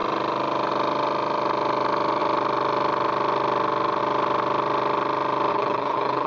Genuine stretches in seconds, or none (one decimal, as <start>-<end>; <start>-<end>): 0.0-5.5